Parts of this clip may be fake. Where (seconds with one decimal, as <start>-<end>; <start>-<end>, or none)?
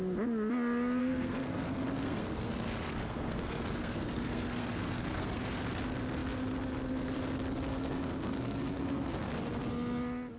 1.0-5.4; 7.7-9.3